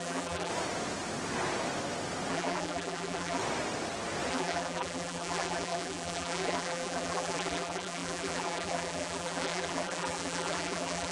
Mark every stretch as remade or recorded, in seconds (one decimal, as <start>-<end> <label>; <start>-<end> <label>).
0.0-0.5 remade; 0.5-2.3 recorded; 2.3-3.4 remade; 3.4-4.3 recorded; 4.3-11.1 remade